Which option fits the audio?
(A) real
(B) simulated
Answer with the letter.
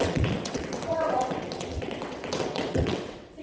B